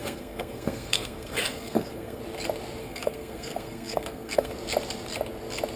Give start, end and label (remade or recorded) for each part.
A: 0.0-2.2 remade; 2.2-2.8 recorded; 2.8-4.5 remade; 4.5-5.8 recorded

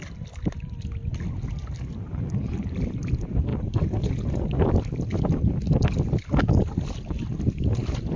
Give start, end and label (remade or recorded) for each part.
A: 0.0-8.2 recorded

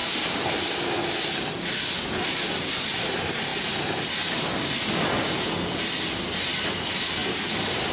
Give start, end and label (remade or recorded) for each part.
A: 0.0-7.9 recorded

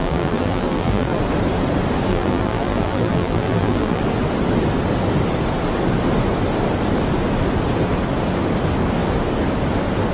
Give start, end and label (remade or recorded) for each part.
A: 0.0-1.2 remade; 1.2-2.1 recorded; 2.1-4.0 remade; 4.0-10.1 recorded

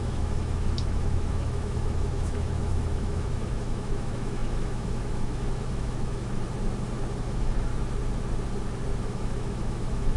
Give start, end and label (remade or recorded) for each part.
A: 0.0-6.4 remade; 6.4-7.2 recorded; 7.2-7.7 remade; 7.7-9.0 recorded; 9.0-10.2 remade

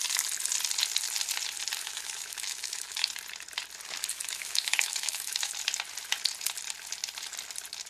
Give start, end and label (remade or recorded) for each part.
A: 0.0-1.8 recorded; 1.8-3.1 remade; 3.1-4.1 recorded; 4.1-5.5 remade; 5.5-7.9 recorded